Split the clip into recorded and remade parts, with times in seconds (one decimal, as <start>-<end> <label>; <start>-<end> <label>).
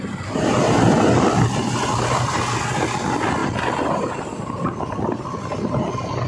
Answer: 0.0-6.3 recorded